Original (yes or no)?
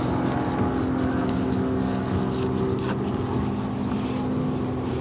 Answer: yes